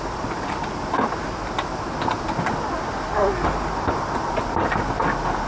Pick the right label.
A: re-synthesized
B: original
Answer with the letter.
B